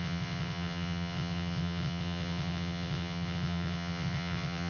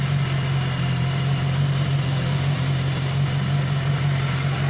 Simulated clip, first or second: first